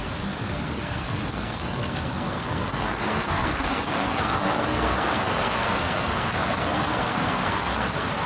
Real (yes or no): no